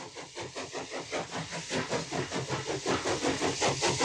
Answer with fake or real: real